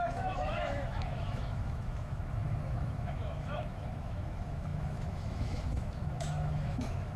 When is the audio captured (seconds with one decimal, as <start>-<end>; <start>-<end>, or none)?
none